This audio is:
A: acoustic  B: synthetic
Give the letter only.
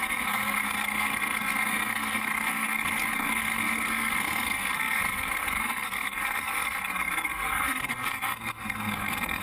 B